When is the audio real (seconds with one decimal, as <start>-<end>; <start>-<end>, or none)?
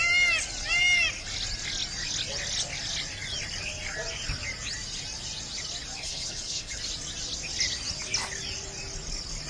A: 0.0-6.0; 6.8-9.5